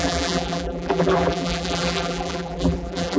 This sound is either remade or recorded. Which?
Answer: remade